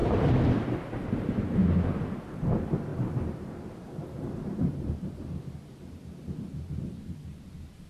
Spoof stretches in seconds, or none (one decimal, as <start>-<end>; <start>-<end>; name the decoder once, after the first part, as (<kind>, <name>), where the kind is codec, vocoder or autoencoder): 0.0-7.9 (vocoder, BigVGAN v2)